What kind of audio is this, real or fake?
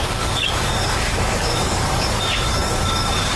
fake